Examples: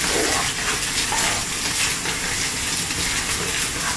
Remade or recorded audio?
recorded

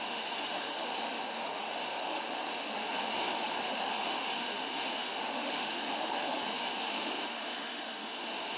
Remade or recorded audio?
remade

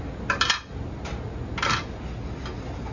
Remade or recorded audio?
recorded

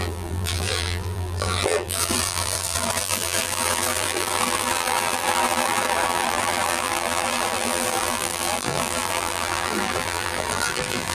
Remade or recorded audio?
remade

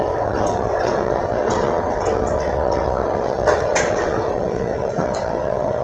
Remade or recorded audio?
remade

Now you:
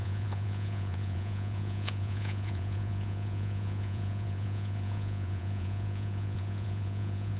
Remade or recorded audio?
remade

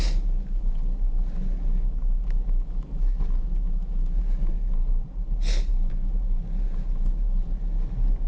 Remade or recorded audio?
recorded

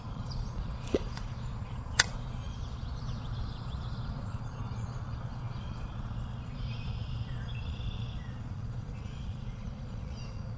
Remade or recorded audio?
remade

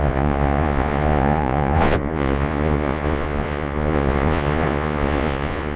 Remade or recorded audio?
remade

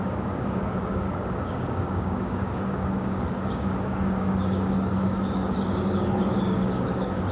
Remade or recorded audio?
remade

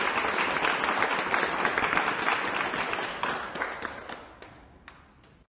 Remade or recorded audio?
recorded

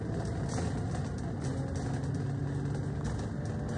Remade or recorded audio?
recorded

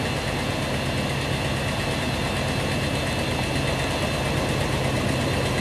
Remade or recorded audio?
recorded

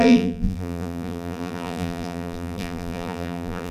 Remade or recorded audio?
remade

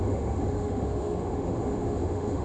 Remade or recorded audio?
remade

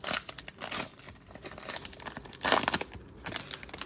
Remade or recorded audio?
recorded